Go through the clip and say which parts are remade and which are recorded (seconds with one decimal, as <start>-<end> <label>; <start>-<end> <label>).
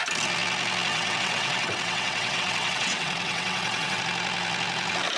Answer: 0.0-0.9 recorded; 0.9-4.0 remade; 4.0-5.2 recorded